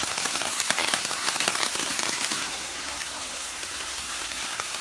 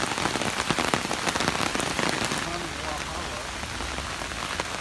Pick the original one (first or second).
second